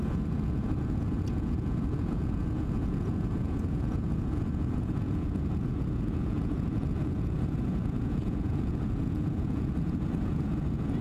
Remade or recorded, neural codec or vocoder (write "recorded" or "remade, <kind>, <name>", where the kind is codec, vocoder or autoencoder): remade, vocoder, Vocos